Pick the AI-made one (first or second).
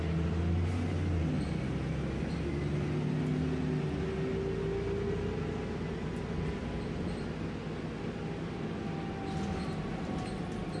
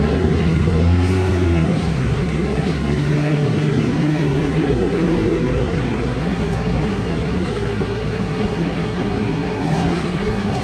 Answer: second